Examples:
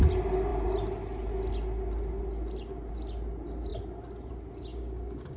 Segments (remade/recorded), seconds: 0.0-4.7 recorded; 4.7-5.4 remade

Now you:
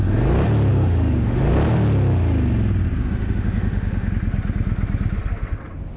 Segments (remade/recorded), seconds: 0.0-0.7 recorded; 0.7-1.4 remade; 1.4-3.0 recorded; 3.0-4.1 remade; 4.1-6.0 recorded

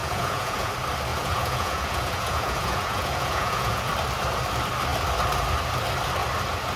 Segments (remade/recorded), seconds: 0.0-0.7 remade; 0.7-1.1 recorded; 1.1-3.9 remade; 3.9-6.8 recorded

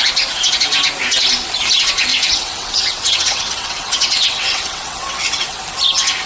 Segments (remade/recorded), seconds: 0.0-2.1 recorded; 2.1-5.6 remade; 5.6-6.3 recorded

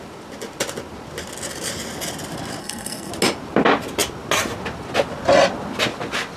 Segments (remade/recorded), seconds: 0.0-2.6 recorded; 2.6-3.1 remade; 3.1-6.4 recorded

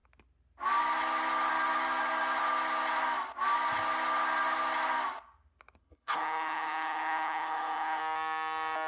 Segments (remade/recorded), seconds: 0.0-5.8 recorded; 5.8-8.0 remade; 8.0-8.9 recorded

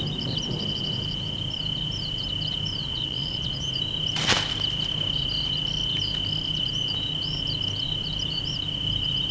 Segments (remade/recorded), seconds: 0.0-2.8 recorded; 2.8-3.7 remade; 3.7-9.3 recorded